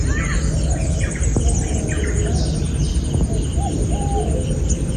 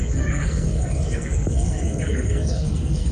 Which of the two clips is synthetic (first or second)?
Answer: second